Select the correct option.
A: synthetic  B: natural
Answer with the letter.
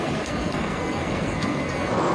A